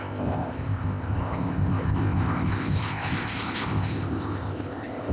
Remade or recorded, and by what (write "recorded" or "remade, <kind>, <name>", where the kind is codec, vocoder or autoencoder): remade, codec, ZipCodec